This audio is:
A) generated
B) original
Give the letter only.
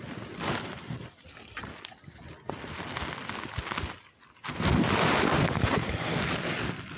B